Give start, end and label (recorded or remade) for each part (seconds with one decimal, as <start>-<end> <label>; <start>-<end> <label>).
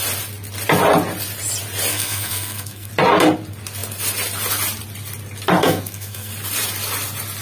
0.0-1.9 recorded; 1.9-2.9 remade; 2.9-5.6 recorded; 5.6-6.3 remade; 6.3-7.4 recorded